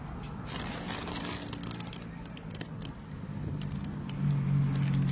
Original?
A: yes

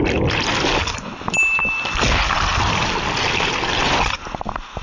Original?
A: yes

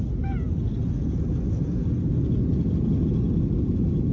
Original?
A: yes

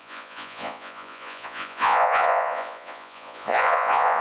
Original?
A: no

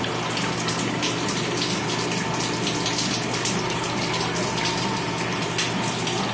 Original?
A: yes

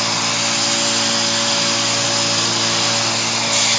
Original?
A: yes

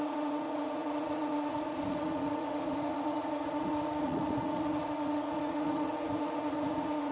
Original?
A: no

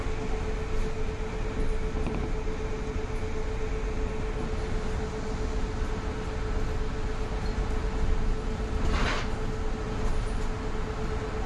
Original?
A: yes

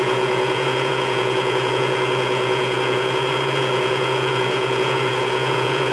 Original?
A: no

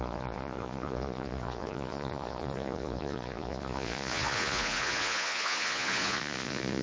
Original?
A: no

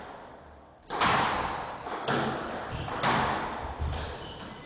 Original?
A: yes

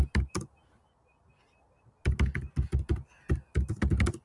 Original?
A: yes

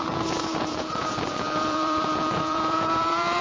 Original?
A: no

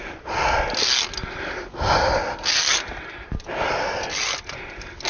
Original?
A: yes